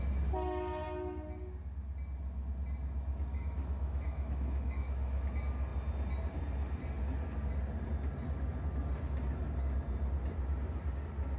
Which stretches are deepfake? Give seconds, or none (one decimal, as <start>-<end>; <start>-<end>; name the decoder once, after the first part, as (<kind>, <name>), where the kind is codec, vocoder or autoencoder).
3.3-5.2 (autoencoder, DAC-VAE)